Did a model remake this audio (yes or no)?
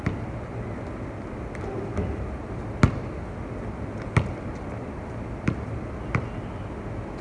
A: no